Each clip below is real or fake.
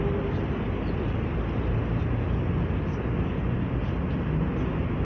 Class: real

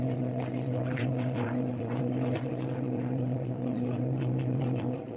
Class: fake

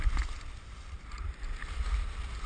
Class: real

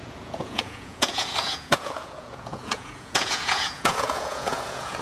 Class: fake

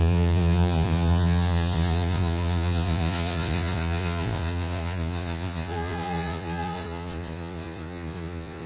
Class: fake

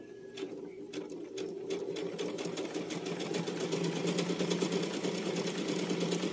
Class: real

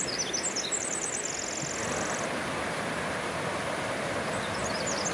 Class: real